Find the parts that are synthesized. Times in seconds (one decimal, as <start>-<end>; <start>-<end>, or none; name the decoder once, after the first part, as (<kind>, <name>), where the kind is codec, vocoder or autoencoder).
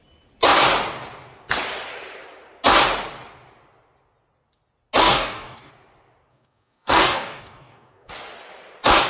5.0-5.7 (codec, DAC); 6.3-8.1